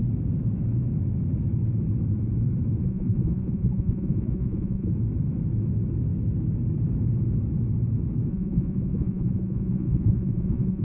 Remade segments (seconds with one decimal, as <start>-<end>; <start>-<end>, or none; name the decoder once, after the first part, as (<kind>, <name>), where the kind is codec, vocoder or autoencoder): 2.8-4.9 (vocoder, Vocos); 8.3-10.8